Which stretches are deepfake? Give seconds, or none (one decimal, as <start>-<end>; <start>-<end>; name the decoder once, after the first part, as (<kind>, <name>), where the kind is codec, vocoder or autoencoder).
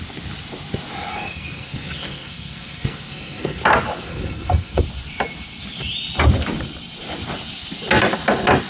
1.1-3.6 (codec, SNAC); 4.1-4.8